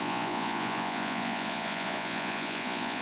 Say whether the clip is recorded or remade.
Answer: remade